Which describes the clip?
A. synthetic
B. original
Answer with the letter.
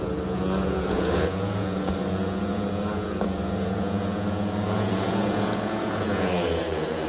A